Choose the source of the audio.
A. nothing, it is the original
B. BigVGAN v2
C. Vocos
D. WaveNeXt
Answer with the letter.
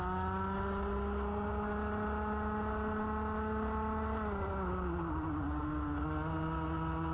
A